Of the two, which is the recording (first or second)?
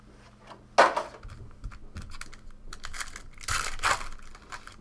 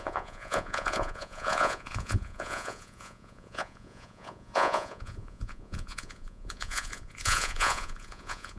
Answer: first